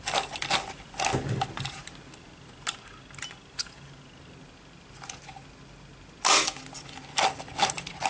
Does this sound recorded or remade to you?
recorded